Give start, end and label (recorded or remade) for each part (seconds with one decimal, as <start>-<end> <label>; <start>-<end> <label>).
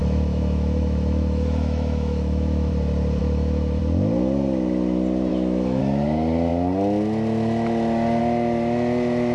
0.0-2.7 remade; 2.7-3.2 recorded; 3.2-3.8 remade; 3.8-5.3 recorded; 5.3-5.8 remade; 5.8-9.3 recorded